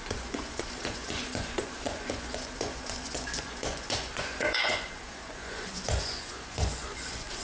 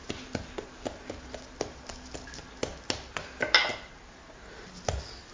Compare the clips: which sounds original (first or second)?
second